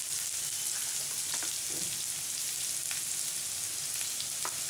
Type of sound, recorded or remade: recorded